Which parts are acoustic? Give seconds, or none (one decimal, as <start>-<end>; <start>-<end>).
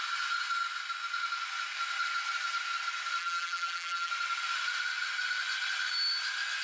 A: 0.0-3.2; 4.1-6.6